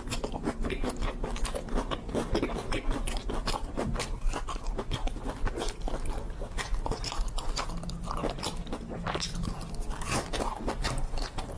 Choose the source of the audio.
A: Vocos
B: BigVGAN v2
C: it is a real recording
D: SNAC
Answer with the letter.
C